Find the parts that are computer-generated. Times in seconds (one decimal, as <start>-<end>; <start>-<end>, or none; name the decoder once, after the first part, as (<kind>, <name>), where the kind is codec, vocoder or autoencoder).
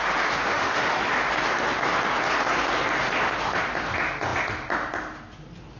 0.5-1.0 (autoencoder, DAC-VAE)